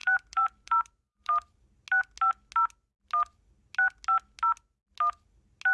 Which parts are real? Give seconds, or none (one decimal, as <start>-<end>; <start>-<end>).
1.6-5.7